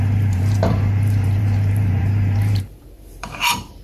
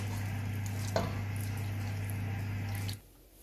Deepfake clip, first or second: first